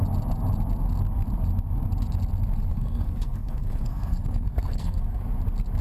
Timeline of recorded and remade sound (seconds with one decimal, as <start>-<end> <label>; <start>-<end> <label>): 0.0-2.7 recorded; 2.7-5.2 remade; 5.2-5.8 recorded

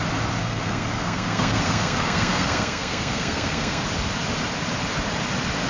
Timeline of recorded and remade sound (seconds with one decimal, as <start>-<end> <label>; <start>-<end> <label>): 0.0-0.4 recorded; 0.4-3.8 remade; 3.8-5.7 recorded

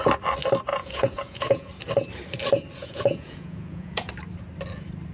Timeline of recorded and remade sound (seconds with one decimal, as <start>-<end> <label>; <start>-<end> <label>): 0.0-0.7 recorded; 0.7-1.7 remade; 1.7-2.8 recorded; 2.8-4.1 remade; 4.1-5.1 recorded

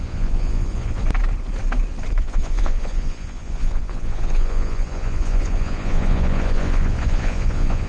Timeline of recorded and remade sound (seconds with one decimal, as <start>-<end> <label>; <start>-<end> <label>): 0.0-1.0 remade; 1.0-2.2 recorded; 2.2-7.9 remade

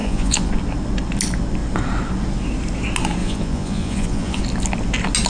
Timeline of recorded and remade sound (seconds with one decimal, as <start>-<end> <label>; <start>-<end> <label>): 0.0-0.5 remade; 0.5-3.2 recorded; 3.2-4.4 remade; 4.4-5.3 recorded

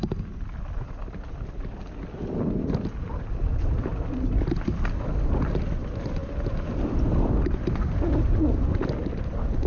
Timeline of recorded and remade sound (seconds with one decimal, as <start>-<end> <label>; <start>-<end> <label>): 0.0-9.7 recorded